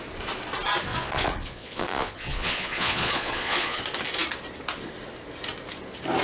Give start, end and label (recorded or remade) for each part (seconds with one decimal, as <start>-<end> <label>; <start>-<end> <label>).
0.0-0.9 recorded; 0.9-3.8 remade; 3.8-6.2 recorded

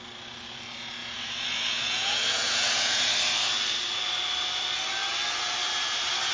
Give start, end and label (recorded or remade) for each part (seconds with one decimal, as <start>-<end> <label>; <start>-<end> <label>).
0.0-1.0 recorded; 1.0-3.1 remade; 3.1-6.3 recorded